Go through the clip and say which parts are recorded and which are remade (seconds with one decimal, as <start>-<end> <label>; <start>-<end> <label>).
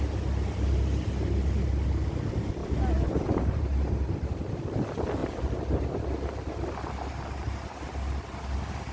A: 0.0-2.6 recorded; 2.6-3.6 remade; 3.6-5.2 recorded; 5.2-5.8 remade; 5.8-8.9 recorded